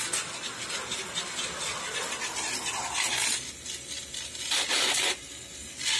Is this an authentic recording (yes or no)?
yes